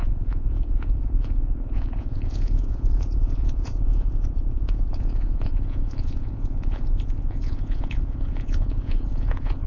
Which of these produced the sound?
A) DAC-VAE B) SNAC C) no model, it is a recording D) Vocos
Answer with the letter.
D